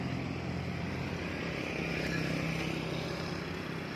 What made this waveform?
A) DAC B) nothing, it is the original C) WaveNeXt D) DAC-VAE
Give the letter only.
B